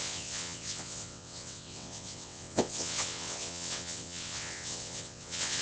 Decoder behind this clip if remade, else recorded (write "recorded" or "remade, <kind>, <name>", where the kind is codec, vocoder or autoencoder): remade, vocoder, WaveNeXt